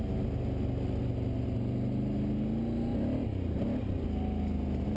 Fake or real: real